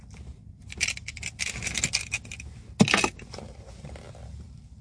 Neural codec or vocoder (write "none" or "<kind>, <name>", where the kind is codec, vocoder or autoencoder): none